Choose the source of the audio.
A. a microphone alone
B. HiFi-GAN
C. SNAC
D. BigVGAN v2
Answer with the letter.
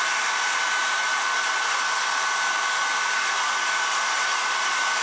A